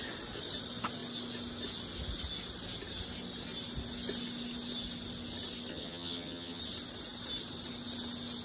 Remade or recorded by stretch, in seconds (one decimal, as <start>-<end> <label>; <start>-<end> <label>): 0.0-5.7 recorded; 5.7-6.6 remade; 6.6-8.4 recorded